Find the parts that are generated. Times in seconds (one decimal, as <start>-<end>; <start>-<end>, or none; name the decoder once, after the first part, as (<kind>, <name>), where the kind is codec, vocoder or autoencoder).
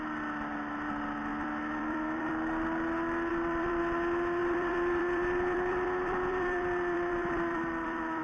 1.3-2.3 (vocoder, BigVGAN v2); 3.3-3.8; 4.4-8.2